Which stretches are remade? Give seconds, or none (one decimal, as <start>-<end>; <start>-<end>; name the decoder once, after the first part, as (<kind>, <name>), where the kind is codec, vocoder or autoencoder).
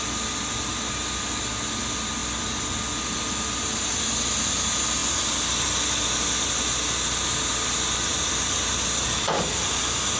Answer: none